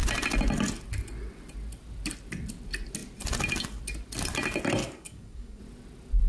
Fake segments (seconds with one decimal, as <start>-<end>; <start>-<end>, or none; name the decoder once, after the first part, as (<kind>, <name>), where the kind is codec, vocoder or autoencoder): 4.8-5.6 (codec, DAC)